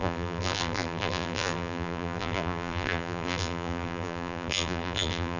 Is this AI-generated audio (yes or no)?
yes